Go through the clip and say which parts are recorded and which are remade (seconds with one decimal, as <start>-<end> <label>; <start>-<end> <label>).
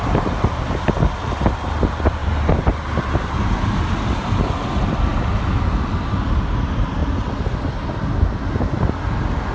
0.0-2.2 recorded; 2.2-4.3 remade; 4.3-9.5 recorded